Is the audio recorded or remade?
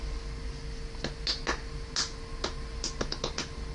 recorded